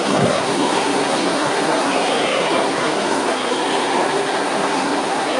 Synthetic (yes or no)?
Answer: yes